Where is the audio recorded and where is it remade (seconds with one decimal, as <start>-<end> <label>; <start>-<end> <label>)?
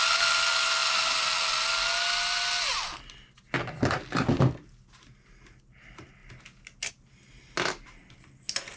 0.0-8.8 recorded